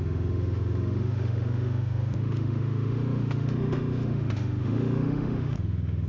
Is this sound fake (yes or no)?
yes